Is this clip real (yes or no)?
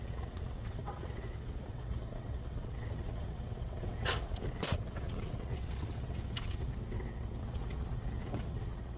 no